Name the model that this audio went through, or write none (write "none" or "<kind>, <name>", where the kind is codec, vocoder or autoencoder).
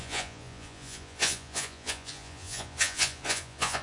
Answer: vocoder, Vocos